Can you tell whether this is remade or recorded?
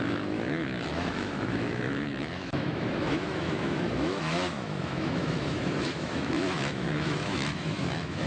remade